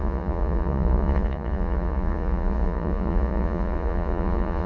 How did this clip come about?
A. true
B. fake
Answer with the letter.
B